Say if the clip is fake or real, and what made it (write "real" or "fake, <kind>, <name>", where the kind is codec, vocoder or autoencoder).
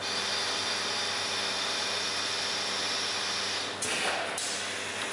real